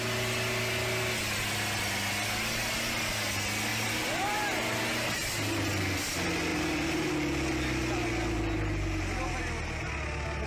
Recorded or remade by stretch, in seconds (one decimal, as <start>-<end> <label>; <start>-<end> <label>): 0.0-3.7 recorded; 3.7-4.8 remade; 4.8-6.5 recorded; 6.5-7.1 remade; 7.1-10.5 recorded